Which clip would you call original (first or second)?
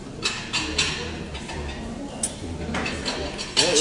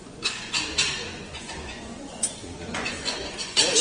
first